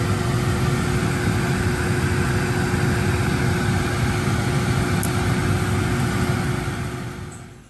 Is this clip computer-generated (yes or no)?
no